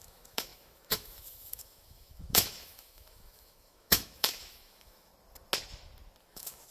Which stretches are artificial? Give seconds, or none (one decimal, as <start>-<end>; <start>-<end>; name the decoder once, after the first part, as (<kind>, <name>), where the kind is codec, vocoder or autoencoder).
0.0-5.1 (autoencoder, DAC-VAE); 6.2-6.7